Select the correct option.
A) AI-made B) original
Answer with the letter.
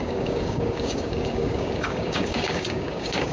A